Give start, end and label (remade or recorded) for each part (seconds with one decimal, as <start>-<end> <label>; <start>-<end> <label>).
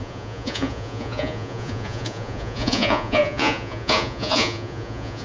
0.0-5.2 remade